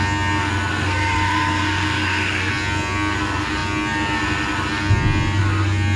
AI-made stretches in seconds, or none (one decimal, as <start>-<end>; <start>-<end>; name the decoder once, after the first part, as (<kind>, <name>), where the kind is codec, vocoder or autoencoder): 0.7-2.5 (codec, SNAC)